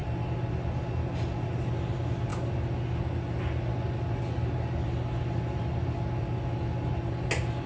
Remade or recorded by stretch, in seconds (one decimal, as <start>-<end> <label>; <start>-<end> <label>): 0.0-7.7 recorded